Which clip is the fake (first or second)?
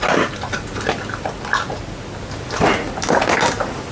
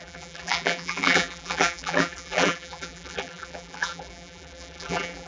second